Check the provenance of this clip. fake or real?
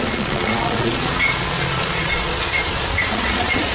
fake